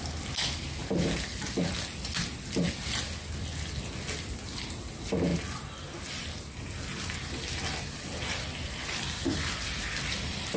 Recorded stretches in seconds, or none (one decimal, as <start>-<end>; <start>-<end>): 0.0-10.6